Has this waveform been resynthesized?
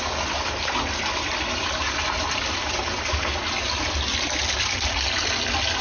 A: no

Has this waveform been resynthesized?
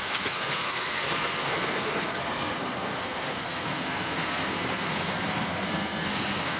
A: yes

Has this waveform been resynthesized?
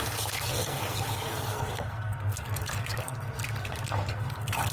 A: yes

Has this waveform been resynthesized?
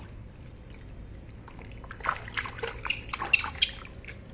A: no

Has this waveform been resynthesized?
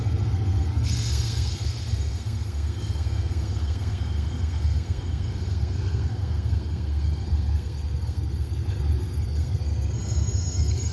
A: yes